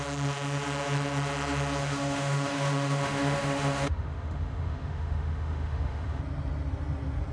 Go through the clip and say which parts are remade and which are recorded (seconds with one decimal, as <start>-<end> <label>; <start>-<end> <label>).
0.0-1.8 recorded; 1.8-6.2 remade; 6.2-7.3 recorded